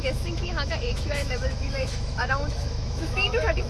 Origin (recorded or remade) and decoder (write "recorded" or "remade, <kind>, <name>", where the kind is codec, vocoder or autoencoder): remade, autoencoder, DAC-VAE